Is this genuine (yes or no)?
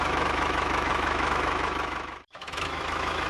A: no